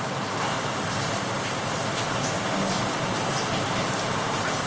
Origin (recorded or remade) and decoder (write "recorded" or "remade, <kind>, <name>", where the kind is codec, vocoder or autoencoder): recorded